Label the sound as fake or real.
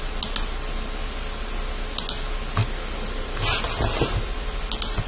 real